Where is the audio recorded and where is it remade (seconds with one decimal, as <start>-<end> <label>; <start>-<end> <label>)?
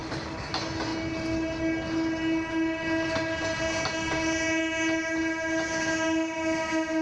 0.0-0.5 remade; 0.5-7.0 recorded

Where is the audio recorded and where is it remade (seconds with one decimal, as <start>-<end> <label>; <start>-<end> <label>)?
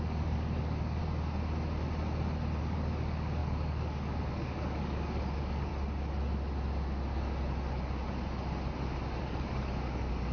0.0-1.0 remade; 1.0-2.6 recorded; 2.6-5.7 remade; 5.7-9.2 recorded; 9.2-10.3 remade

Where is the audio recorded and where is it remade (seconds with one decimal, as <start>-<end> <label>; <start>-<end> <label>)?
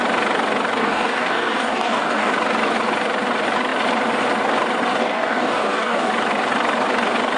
0.0-0.8 recorded; 0.8-2.3 remade; 2.3-5.0 recorded; 5.0-6.1 remade; 6.1-7.4 recorded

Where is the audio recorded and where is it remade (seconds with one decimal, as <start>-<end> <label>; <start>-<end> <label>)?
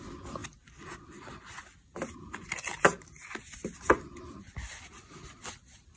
0.0-6.0 recorded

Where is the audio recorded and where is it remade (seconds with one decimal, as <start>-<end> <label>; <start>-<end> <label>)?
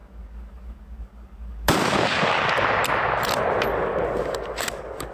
0.0-2.4 remade; 2.4-3.7 recorded; 3.7-5.1 remade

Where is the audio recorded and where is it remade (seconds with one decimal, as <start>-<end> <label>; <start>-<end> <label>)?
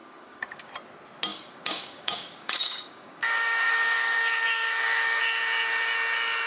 0.0-0.7 remade; 0.7-1.3 recorded; 1.3-5.2 remade; 5.2-6.5 recorded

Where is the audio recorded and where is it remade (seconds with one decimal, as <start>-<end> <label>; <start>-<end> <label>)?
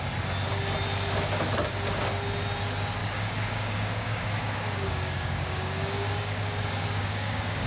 0.0-3.0 recorded; 3.0-7.7 remade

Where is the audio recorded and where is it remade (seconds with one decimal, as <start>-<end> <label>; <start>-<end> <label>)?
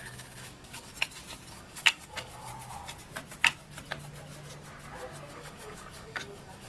0.0-0.9 remade; 0.9-1.5 recorded; 1.5-2.5 remade; 2.5-5.3 recorded; 5.3-6.7 remade